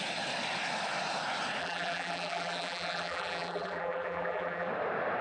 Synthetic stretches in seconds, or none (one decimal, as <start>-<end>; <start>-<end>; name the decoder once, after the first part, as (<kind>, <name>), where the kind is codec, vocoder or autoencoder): 1.6-4.7 (vocoder, BigVGAN v2)